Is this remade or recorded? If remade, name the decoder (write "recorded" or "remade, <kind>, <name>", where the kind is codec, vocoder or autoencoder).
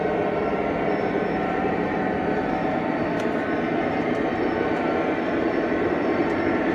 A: remade, vocoder, BigVGAN v2